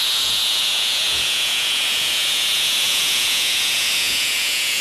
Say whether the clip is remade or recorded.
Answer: remade